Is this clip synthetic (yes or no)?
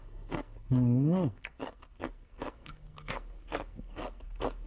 yes